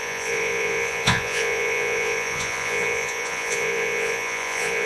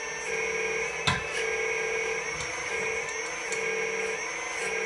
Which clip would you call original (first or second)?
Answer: second